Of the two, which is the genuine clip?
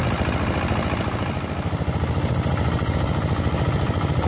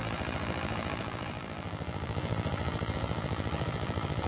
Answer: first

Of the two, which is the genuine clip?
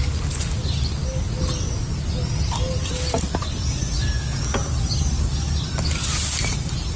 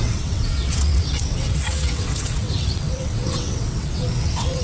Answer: first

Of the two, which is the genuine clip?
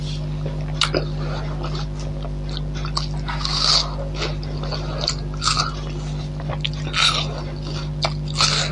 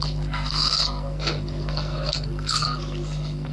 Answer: first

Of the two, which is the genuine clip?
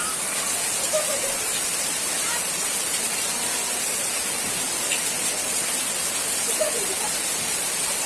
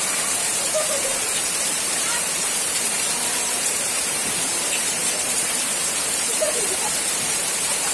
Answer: first